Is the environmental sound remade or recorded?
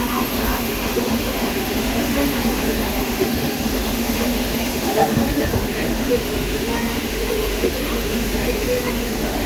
remade